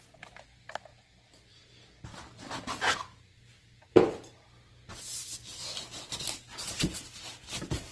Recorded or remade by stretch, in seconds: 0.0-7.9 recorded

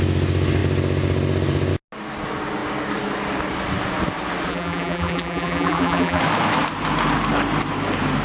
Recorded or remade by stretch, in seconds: 0.0-4.5 recorded; 4.5-6.2 remade; 6.2-8.2 recorded

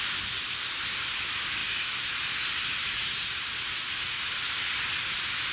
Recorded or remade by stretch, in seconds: 0.0-5.5 recorded

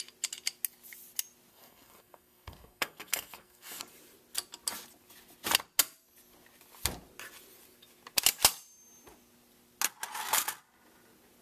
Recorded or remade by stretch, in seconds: 0.0-1.5 recorded; 1.5-3.8 remade; 3.8-11.4 recorded

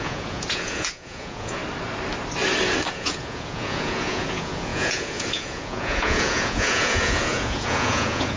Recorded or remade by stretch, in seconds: 0.0-1.6 remade; 1.6-2.9 recorded; 2.9-8.4 remade

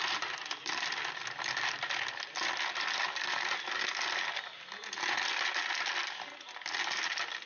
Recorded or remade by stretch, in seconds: 0.0-7.5 recorded